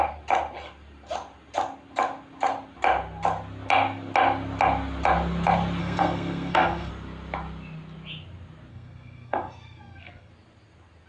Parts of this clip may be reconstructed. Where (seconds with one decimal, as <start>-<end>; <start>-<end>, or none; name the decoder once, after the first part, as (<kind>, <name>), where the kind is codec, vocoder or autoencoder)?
5.8-6.9 (codec, SNAC); 8.7-10.3